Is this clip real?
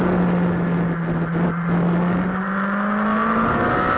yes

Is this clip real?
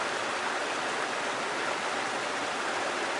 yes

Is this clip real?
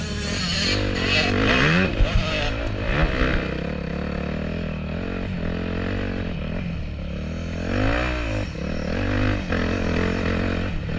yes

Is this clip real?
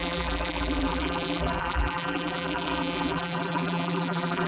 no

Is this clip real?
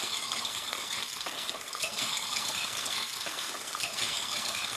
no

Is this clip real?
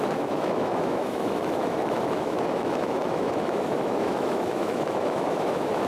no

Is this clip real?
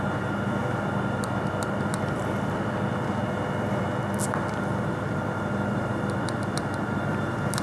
yes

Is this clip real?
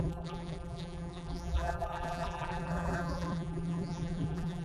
no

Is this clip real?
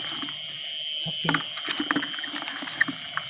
yes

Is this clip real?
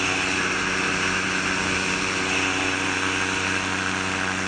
yes